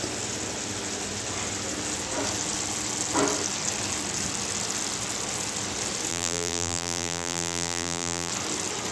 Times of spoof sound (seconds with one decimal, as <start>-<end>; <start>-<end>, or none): 6.1-8.3